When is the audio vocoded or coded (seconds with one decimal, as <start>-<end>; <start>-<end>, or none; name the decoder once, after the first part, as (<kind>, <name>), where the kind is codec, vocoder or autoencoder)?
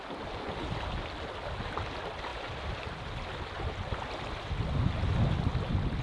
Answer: none